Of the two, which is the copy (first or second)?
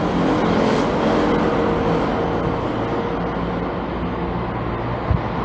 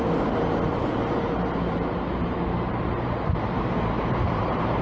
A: second